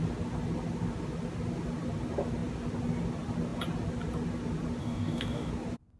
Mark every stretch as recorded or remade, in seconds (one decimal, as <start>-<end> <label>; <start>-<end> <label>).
0.0-4.8 recorded; 4.8-5.5 remade; 5.5-6.0 recorded